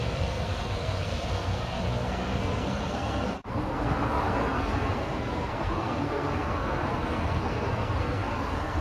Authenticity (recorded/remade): remade